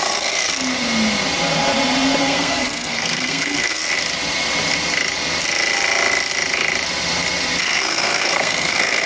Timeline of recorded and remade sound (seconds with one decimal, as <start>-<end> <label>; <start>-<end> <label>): 0.0-0.5 remade; 0.5-2.2 recorded; 2.2-3.8 remade; 3.8-7.6 recorded; 7.6-9.1 remade